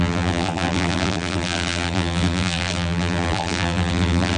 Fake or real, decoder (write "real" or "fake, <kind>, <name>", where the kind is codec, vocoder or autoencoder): fake, vocoder, BigVGAN v2